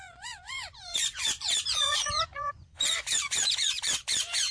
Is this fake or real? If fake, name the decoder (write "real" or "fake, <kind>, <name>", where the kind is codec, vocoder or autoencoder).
fake, vocoder, Vocos